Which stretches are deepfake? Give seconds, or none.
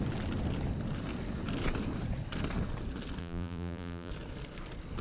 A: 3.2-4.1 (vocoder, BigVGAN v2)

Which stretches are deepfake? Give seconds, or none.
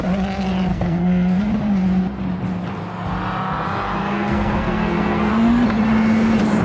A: 0.7-1.4 (codec, SNAC); 4.0-5.3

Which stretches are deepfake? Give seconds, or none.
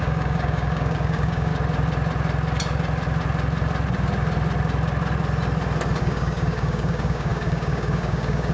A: 0.0-1.5 (codec, DAC); 6.0-8.5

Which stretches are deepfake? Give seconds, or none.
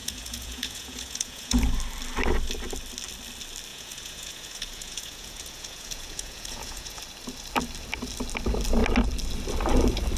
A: 0.0-1.6 (vocoder, Vocos); 3.7-7.0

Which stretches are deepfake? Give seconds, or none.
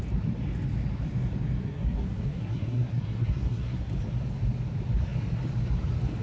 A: 1.6-3.9 (codec, SNAC)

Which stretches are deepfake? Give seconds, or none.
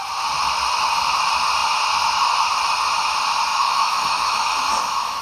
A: 3.5-5.2 (autoencoder, DAC-VAE)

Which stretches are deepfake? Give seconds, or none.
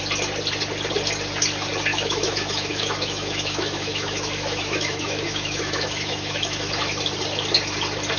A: 1.9-6.7 (autoencoder, DAC-VAE)